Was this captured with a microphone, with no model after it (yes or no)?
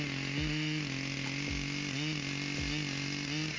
yes